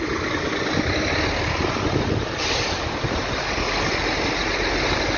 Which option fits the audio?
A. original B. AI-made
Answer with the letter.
A